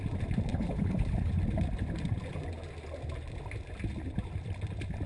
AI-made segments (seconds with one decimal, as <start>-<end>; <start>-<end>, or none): 0.5-1.3

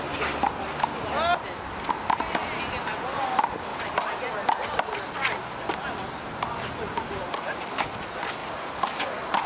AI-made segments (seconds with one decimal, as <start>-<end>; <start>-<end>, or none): none

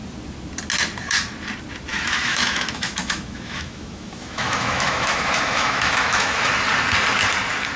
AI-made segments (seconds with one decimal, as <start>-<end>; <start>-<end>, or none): 1.9-6.5

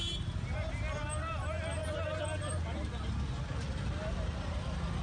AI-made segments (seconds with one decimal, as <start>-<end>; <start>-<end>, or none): none